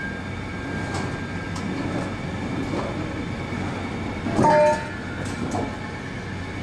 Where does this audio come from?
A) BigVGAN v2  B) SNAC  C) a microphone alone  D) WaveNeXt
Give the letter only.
C